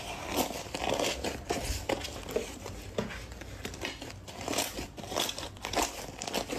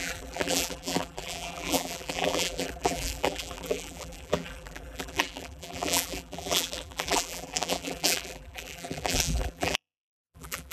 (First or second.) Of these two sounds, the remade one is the second